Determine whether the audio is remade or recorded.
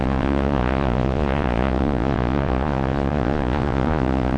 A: remade